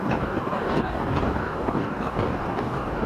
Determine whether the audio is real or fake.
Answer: fake